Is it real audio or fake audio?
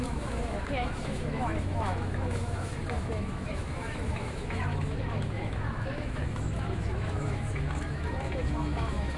fake